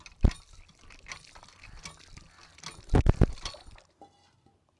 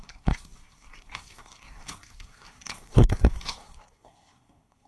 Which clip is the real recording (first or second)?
first